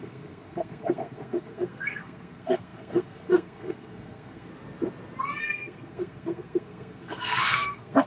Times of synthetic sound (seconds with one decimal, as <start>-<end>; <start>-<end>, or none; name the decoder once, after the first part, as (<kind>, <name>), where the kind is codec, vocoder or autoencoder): 0.0-4.5 (codec, SNAC); 5.4-8.1